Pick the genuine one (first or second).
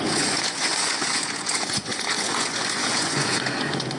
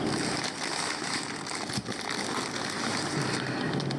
second